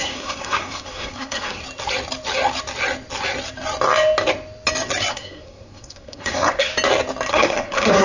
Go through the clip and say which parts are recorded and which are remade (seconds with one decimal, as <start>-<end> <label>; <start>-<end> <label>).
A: 0.0-1.6 remade; 1.6-5.1 recorded; 5.1-6.7 remade; 6.7-7.3 recorded; 7.3-8.0 remade